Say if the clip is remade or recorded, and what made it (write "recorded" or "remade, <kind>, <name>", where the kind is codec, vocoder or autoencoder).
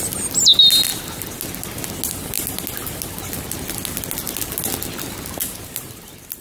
recorded